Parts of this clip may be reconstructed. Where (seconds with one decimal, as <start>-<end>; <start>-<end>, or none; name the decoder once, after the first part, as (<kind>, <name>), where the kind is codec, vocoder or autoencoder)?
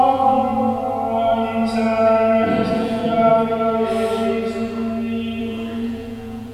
0.0-0.5 (vocoder, Vocos); 2.7-3.3; 5.4-6.5